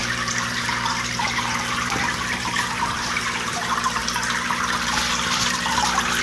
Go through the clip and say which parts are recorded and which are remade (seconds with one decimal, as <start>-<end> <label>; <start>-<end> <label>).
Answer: 0.0-4.0 remade; 4.0-6.2 recorded